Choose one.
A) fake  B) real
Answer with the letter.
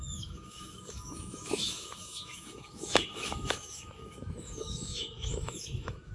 A